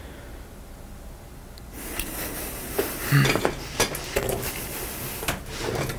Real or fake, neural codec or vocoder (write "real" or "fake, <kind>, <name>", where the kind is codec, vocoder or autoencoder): real